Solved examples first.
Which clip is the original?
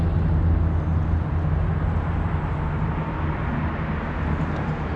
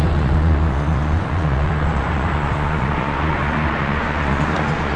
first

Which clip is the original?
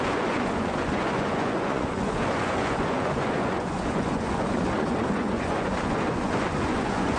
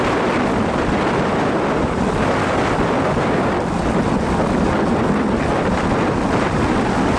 second